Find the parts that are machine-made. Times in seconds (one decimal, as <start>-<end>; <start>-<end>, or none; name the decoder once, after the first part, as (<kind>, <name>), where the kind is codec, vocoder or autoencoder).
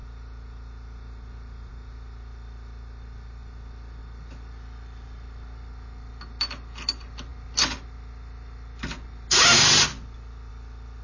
none